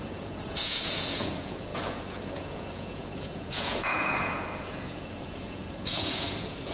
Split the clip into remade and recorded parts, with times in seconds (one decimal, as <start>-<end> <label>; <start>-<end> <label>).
0.0-6.7 remade